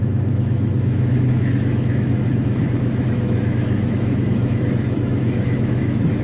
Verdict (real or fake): fake